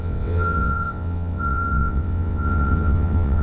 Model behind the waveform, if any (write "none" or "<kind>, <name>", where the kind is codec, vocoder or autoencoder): vocoder, WaveNeXt